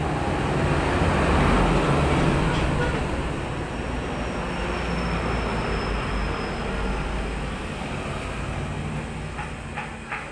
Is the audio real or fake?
real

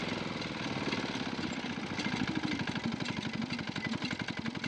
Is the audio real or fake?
real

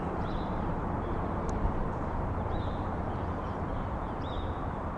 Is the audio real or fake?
fake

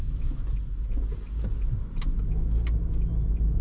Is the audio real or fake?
real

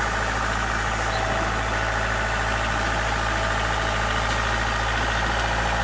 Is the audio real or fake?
real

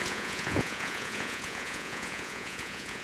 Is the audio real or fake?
fake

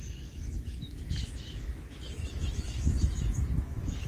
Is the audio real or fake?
fake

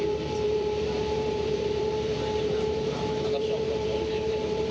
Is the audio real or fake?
fake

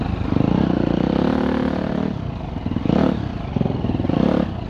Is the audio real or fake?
real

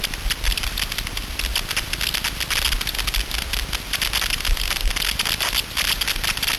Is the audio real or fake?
real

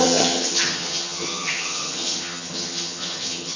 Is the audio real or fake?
fake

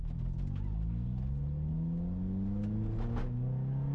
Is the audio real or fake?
real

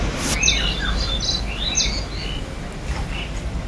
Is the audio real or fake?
real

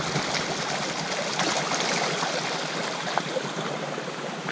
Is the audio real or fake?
real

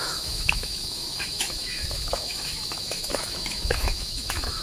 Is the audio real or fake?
fake